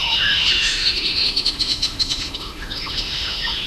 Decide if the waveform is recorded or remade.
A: remade